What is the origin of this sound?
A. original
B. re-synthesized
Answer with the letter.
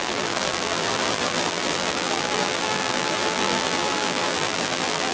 B